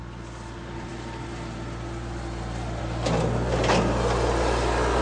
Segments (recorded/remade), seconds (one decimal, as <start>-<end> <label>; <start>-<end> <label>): 0.0-5.0 recorded

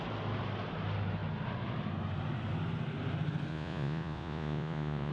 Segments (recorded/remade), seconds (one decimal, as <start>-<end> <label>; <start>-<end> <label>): 0.0-3.5 recorded; 3.5-5.1 remade

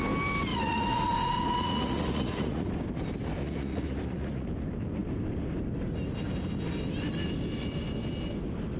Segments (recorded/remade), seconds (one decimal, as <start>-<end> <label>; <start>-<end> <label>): 0.0-0.5 recorded; 0.5-2.7 remade; 2.7-3.4 recorded; 3.4-4.5 remade; 4.5-8.8 recorded

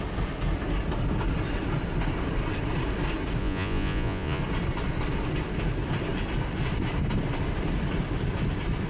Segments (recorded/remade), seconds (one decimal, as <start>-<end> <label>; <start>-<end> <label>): 0.0-3.4 recorded; 3.4-4.4 remade; 4.4-8.9 recorded

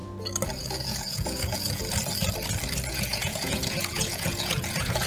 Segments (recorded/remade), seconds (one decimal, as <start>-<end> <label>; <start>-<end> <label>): 0.0-0.6 recorded; 0.6-1.8 remade; 1.8-2.9 recorded; 2.9-5.1 remade

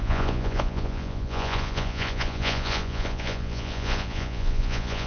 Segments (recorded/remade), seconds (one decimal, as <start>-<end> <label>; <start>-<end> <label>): 0.0-5.1 remade

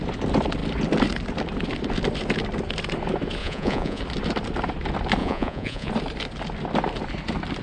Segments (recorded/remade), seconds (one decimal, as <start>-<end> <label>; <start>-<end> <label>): 0.0-3.4 recorded; 3.4-4.0 remade; 4.0-5.2 recorded; 5.2-5.9 remade; 5.9-7.6 recorded